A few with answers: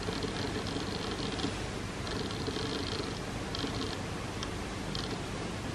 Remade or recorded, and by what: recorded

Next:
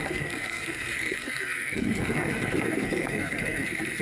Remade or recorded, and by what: remade, codec, SNAC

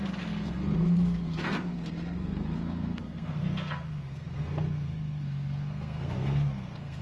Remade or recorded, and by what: remade, codec, SNAC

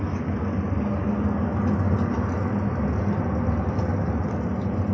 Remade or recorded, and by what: recorded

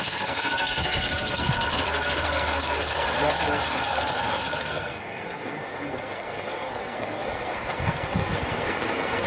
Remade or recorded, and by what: remade, codec, SNAC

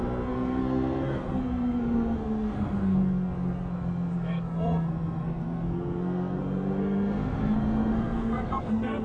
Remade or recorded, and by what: remade, codec, SNAC